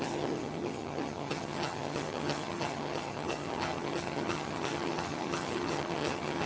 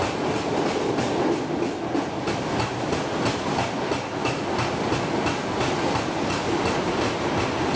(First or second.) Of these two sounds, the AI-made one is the first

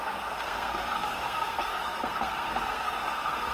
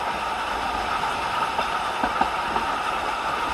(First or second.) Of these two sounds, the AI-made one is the first